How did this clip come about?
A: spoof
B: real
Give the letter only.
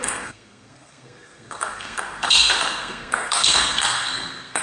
A